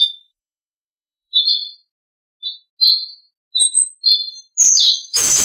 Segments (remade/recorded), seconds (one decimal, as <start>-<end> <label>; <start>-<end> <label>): 0.0-1.6 remade; 1.6-4.8 recorded; 4.8-5.4 remade